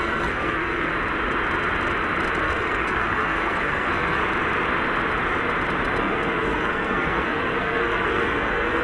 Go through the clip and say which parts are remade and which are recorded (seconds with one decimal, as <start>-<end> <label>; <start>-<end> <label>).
0.0-0.9 remade; 0.9-2.4 recorded; 2.4-4.2 remade; 4.2-6.0 recorded; 6.0-8.8 remade